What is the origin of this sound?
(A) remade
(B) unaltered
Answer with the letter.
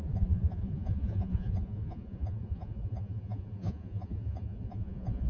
A